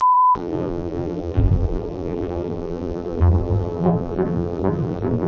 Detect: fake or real fake